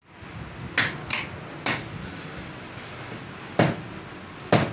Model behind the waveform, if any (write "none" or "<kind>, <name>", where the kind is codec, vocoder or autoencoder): none